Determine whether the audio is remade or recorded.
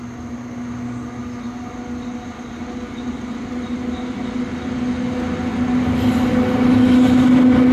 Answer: recorded